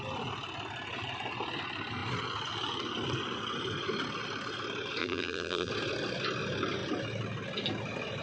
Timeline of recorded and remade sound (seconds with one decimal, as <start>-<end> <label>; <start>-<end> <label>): 0.0-5.0 recorded; 5.0-5.7 remade; 5.7-8.2 recorded